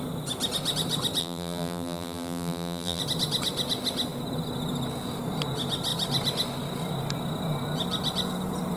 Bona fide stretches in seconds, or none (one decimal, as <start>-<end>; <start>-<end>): 0.0-1.2; 3.0-8.8